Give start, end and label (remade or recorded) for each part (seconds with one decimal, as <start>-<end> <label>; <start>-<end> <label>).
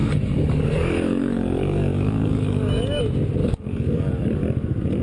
0.0-3.0 remade; 3.0-3.4 recorded; 3.4-4.4 remade; 4.4-5.0 recorded